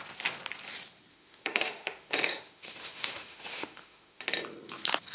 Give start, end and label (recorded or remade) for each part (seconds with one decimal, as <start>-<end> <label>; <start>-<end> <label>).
0.0-1.1 recorded; 1.1-4.2 remade; 4.2-5.1 recorded